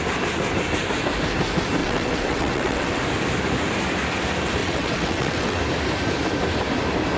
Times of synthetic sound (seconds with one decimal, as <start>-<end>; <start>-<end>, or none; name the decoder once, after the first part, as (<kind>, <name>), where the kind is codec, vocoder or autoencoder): 1.8-3.0 (vocoder, WaveNeXt); 4.6-5.6